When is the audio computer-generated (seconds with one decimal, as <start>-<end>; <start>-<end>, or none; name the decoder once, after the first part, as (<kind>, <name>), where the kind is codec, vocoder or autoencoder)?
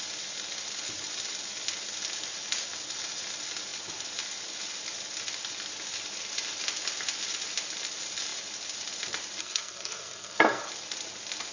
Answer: 9.4-10.7 (codec, SNAC)